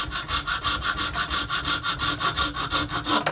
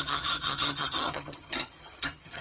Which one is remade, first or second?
second